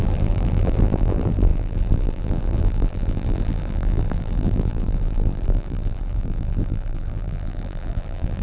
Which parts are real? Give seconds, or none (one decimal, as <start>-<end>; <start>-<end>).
none